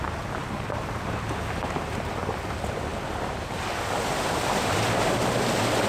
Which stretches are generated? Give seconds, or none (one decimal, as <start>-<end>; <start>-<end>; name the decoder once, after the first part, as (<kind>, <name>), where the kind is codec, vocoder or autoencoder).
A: 0.4-2.1 (vocoder, BigVGAN v2)

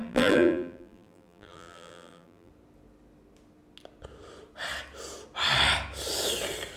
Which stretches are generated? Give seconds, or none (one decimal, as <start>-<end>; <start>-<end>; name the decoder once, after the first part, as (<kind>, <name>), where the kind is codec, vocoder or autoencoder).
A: 0.0-2.5 (vocoder, BigVGAN v2)

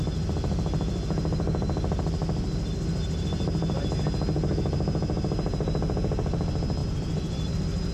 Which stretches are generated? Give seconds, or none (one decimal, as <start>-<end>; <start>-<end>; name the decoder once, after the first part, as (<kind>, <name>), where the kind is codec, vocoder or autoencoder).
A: 6.8-7.9 (vocoder, BigVGAN v2)

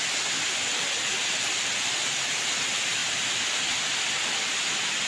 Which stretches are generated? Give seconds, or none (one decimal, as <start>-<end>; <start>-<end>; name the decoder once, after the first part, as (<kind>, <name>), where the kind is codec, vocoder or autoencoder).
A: none

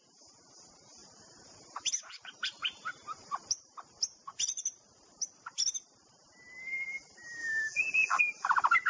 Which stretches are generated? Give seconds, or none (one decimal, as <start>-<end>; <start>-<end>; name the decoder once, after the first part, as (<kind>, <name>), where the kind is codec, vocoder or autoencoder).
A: 7.4-8.2 (vocoder, BigVGAN v2)

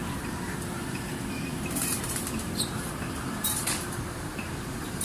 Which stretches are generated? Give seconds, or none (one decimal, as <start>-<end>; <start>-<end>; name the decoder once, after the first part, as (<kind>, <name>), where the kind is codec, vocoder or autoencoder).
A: 0.0-5.0 (vocoder, BigVGAN v2)